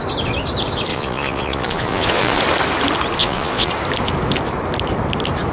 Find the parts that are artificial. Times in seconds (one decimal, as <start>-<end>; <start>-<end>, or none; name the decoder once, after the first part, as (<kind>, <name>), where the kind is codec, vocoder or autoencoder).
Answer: 0.9-2.4 (vocoder, Vocos); 3.2-3.7